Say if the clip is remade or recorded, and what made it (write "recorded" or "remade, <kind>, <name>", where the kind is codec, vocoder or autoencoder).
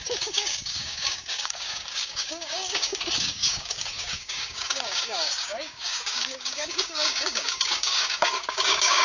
remade, codec, DAC